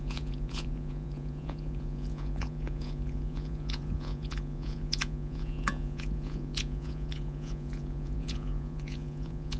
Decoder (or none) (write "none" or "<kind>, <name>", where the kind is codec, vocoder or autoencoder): vocoder, Vocos